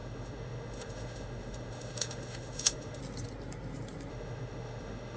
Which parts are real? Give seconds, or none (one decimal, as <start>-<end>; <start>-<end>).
3.0-4.1